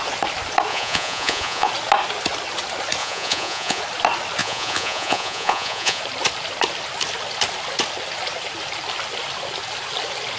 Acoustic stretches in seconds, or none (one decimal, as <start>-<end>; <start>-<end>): 0.0-0.7; 1.7-3.0; 3.8-4.4; 6.0-10.4